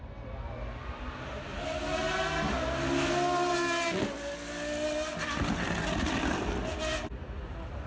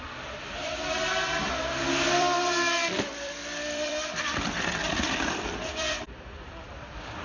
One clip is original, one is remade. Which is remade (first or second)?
second